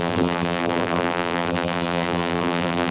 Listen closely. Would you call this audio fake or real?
fake